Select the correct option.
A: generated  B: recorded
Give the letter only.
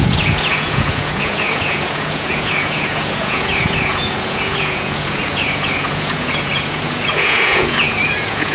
A